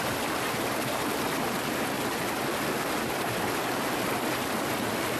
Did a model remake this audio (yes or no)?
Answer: no